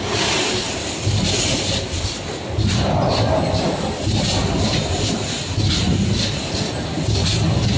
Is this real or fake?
real